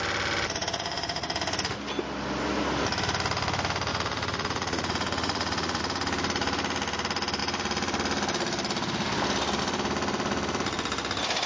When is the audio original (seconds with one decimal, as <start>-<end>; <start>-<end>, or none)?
0.0-0.6; 1.3-3.9; 5.8-11.5